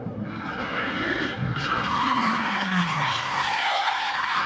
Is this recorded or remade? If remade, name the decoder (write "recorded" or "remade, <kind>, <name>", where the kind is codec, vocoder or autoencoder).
remade, codec, SNAC